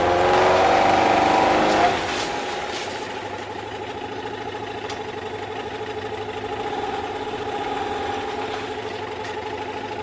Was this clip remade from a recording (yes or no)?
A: no